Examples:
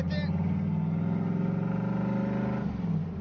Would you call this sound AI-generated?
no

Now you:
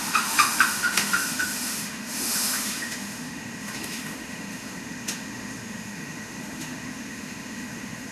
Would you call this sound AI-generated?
yes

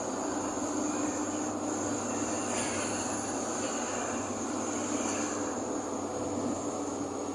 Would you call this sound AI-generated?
no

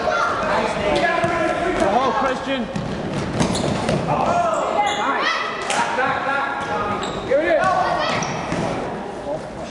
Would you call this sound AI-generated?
no